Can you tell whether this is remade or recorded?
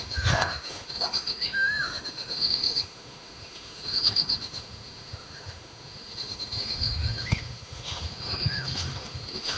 remade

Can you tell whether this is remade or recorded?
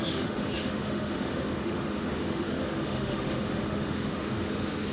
remade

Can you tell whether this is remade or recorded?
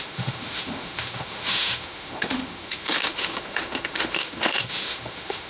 remade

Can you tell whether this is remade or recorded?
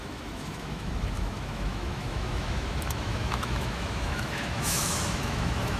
remade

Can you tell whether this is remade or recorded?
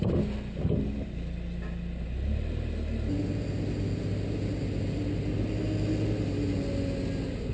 recorded